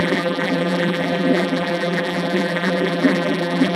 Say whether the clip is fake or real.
fake